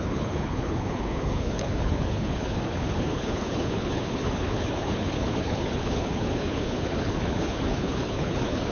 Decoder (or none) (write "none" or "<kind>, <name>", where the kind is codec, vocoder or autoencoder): codec, HILCodec